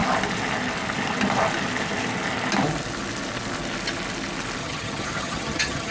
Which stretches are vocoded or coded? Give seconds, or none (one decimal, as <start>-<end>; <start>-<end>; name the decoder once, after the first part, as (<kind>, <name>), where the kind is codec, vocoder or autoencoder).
4.6-5.9 (vocoder, HiFi-GAN)